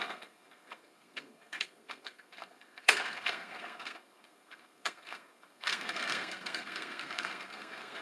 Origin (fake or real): fake